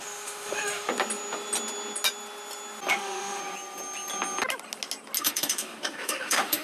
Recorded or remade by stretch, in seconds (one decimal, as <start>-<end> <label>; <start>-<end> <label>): 0.0-0.9 remade; 0.9-2.9 recorded; 2.9-3.4 remade; 3.4-5.2 recorded; 5.2-6.6 remade